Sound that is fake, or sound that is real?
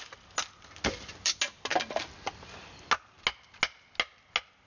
real